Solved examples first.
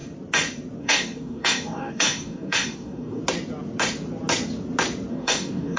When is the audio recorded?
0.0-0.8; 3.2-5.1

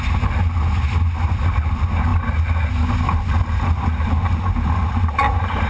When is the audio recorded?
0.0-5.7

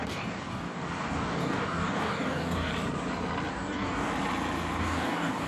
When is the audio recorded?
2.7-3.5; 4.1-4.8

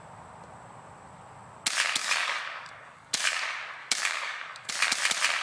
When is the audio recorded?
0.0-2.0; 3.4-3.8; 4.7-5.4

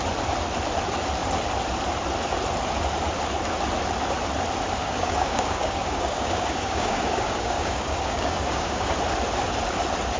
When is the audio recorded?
0.0-4.8; 8.9-10.2

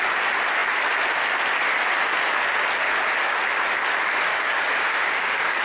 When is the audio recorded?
0.0-4.3

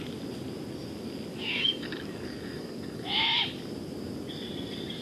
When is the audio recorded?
0.0-1.3; 3.0-5.0